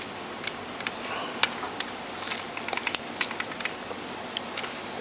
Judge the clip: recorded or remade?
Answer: recorded